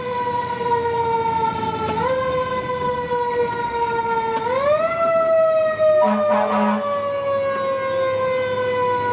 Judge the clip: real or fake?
real